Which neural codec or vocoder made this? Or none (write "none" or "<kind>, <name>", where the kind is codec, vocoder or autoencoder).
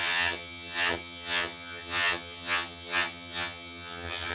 vocoder, HiFi-GAN